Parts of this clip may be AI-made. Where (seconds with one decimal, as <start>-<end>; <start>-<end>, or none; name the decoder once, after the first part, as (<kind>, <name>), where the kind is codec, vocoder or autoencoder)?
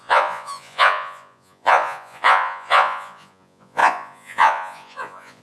0.0-5.4 (vocoder, Vocos)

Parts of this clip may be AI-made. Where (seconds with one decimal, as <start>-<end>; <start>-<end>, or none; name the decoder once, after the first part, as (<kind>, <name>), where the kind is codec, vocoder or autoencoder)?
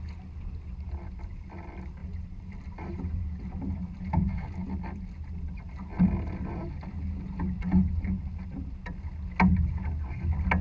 2.0-3.6 (vocoder, BigVGAN v2)